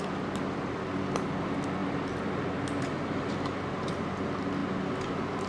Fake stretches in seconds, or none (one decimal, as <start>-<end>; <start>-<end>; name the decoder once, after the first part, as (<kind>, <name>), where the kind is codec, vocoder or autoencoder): none